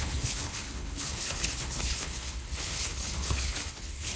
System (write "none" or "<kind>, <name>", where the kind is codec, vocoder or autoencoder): codec, HILCodec